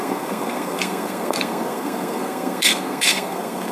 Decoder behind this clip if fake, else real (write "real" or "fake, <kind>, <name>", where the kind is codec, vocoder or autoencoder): fake, codec, SNAC